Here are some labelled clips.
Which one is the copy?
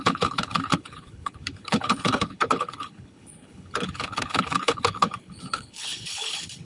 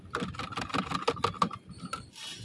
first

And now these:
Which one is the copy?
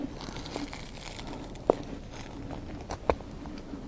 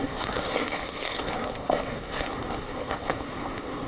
second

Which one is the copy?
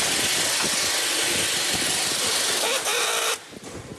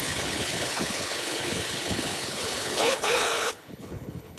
second